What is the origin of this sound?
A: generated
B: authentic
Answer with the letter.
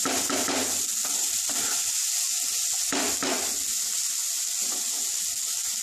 B